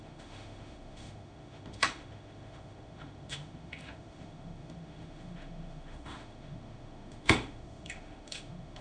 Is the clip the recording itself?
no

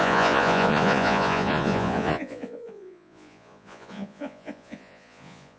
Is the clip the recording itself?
no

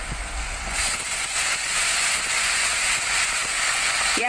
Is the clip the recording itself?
no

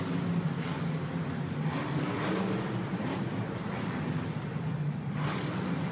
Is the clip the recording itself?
yes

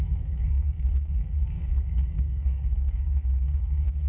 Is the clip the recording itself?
no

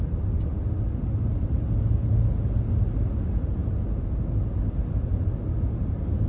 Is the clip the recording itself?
yes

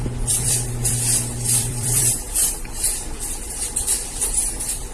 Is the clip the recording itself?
no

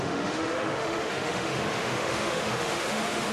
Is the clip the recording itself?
no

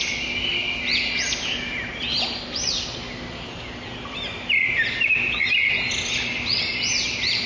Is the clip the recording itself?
yes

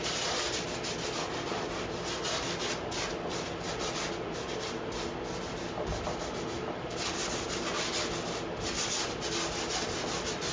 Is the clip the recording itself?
yes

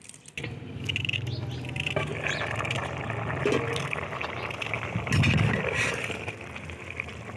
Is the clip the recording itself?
yes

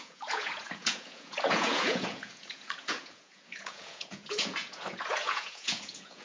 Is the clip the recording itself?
no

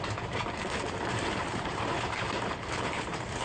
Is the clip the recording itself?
no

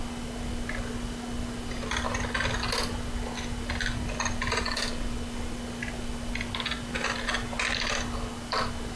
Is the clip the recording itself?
yes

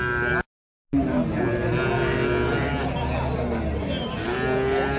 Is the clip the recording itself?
yes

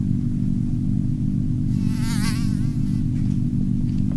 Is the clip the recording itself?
yes